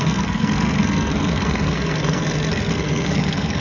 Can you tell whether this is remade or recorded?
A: remade